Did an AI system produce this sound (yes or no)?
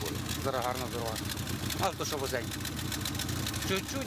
no